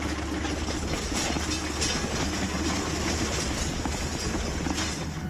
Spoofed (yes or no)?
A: no